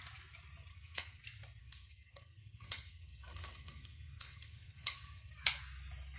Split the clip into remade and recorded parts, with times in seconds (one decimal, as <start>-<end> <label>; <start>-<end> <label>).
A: 0.0-0.7 recorded; 0.7-1.2 remade; 1.2-1.6 recorded; 1.6-5.3 remade; 5.3-6.2 recorded